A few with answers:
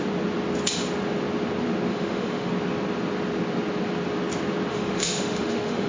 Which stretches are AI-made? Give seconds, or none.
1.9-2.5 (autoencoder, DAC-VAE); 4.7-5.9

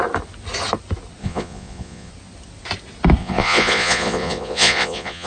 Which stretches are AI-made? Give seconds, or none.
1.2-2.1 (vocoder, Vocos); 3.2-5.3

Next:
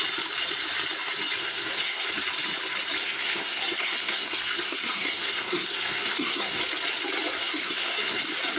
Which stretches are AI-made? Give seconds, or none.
1.4-2.1 (codec, SNAC); 3.0-6.6; 7.4-8.2

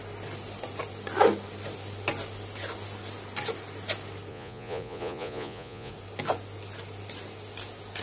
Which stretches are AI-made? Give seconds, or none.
4.3-5.9 (vocoder, Vocos)

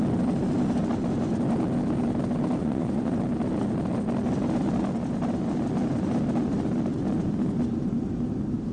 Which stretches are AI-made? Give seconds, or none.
2.6-3.2 (vocoder, Vocos)

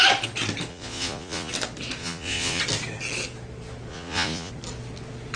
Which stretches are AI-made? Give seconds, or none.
0.7-1.5 (vocoder, Vocos); 2.0-2.6; 3.9-4.5

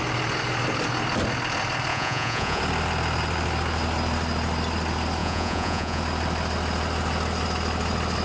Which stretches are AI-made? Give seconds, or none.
1.9-2.6 (vocoder, Vocos); 5.2-6.0

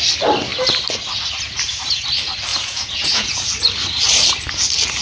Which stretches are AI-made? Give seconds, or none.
2.5-3.4 (vocoder, Vocos)